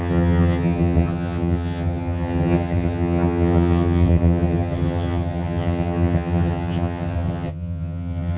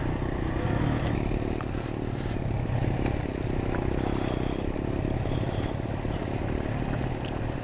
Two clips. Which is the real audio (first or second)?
second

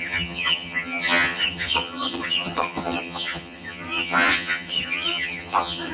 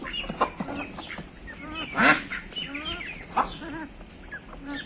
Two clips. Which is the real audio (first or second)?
second